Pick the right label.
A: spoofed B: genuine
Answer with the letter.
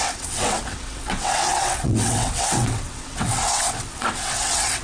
A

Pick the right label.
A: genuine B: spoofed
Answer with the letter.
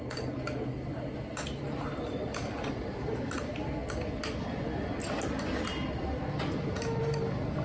A